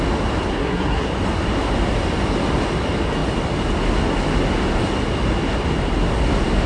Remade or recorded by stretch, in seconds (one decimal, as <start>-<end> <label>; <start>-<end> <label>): 0.0-0.5 recorded; 0.5-1.1 remade; 1.1-6.7 recorded